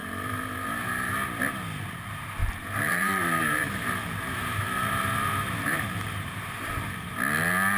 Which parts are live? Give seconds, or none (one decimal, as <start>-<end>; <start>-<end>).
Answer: 1.1-2.4; 7.1-7.8